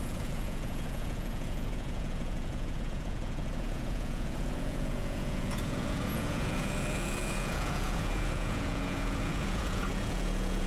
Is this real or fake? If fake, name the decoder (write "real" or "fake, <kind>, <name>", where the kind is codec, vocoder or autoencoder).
fake, vocoder, Vocos